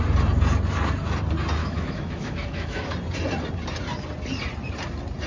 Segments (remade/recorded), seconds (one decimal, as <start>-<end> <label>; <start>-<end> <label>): 0.0-1.6 recorded; 1.6-2.9 remade; 2.9-5.3 recorded